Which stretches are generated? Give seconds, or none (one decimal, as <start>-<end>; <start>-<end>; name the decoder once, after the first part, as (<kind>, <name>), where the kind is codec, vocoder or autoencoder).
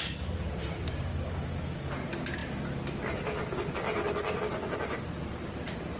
1.1-1.9 (codec, DAC)